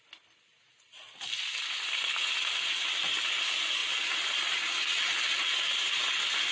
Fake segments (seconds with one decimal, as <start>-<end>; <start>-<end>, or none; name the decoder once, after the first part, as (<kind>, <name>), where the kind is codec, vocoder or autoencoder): none

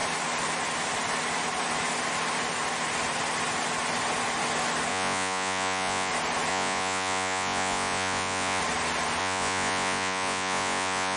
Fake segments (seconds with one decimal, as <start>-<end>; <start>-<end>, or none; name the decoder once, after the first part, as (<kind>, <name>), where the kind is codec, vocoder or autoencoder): 4.9-6.1 (vocoder, Vocos); 6.5-8.6; 9.2-11.2

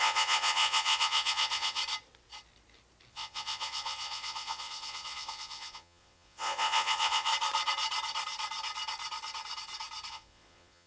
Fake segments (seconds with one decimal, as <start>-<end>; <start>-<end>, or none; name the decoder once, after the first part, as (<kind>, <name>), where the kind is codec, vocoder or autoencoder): 0.0-1.8 (vocoder, Vocos); 3.1-7.3; 10.1-10.9

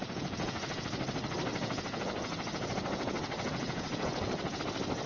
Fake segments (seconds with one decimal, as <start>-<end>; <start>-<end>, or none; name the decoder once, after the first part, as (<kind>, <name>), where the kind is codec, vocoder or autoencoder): 0.0-0.8 (vocoder, Vocos); 1.5-4.6

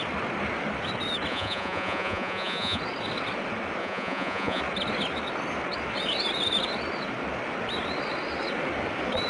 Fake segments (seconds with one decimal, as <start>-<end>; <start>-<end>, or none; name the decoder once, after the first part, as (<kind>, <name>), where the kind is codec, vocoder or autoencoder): 1.3-2.8 (vocoder, Vocos); 3.8-4.6

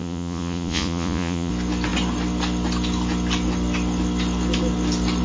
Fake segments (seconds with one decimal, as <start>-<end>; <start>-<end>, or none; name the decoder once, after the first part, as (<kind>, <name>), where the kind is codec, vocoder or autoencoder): 0.0-1.5 (vocoder, Vocos)

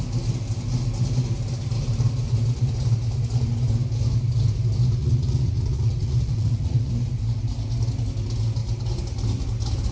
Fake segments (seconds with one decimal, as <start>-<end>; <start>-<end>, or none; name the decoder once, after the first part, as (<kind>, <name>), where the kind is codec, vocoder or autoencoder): 5.0-6.9 (vocoder, Vocos)

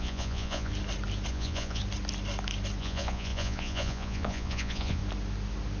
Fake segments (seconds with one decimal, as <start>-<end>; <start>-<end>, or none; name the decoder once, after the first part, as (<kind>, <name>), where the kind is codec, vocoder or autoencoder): 0.0-0.7 (vocoder, Vocos); 1.3-1.8; 2.8-5.0